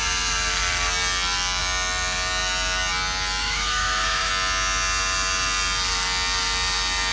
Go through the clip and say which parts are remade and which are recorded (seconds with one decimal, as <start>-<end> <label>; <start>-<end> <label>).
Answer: 0.0-3.4 recorded; 3.4-4.3 remade; 4.3-7.1 recorded